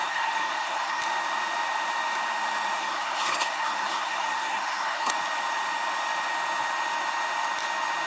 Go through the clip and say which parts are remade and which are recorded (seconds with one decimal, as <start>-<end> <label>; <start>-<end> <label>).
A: 0.0-1.0 remade; 1.0-2.8 recorded; 2.8-5.1 remade; 5.1-8.1 recorded